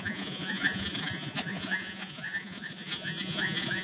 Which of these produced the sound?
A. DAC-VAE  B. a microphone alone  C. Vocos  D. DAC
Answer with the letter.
C